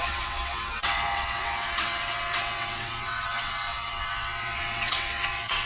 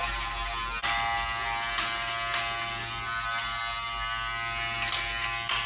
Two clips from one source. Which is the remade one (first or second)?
first